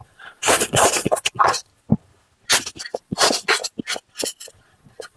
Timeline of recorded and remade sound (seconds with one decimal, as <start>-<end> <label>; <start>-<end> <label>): 0.0-1.7 remade; 1.7-3.0 recorded; 3.0-3.6 remade; 3.6-4.5 recorded; 4.5-5.2 remade